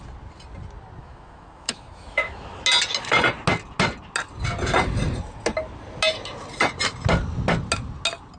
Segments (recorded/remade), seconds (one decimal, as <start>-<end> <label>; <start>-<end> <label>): 0.0-1.0 recorded; 1.0-2.6 remade; 2.6-8.4 recorded